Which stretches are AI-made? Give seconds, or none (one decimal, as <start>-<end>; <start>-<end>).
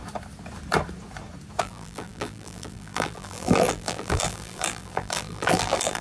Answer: 1.6-6.0